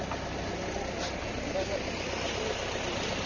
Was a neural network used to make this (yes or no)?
no